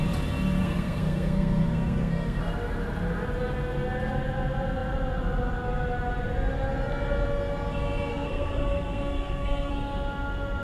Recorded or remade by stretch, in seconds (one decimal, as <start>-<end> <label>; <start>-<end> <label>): 0.0-0.6 recorded; 0.6-2.4 remade; 2.4-8.1 recorded; 8.1-9.7 remade; 9.7-10.6 recorded